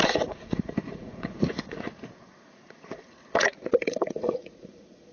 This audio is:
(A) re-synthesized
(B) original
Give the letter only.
A